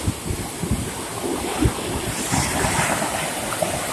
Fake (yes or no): no